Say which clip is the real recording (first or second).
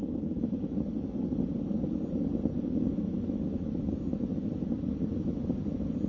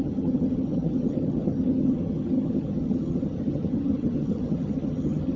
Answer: first